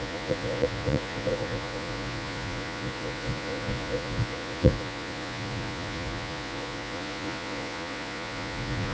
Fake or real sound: fake